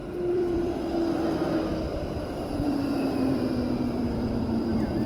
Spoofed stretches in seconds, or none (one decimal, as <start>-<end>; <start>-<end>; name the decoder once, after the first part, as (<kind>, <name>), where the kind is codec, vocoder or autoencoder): 0.0-0.8 (vocoder, BigVGAN v2); 1.9-5.1